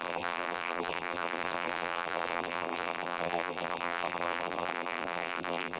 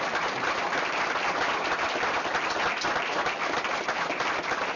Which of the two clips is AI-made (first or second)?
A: first